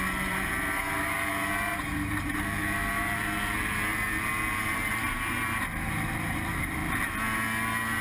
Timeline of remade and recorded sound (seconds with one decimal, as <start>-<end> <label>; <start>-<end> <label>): 0.0-6.8 remade; 6.8-8.0 recorded